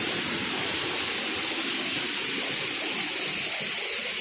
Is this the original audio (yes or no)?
yes